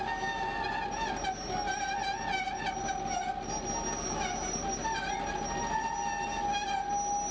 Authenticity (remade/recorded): recorded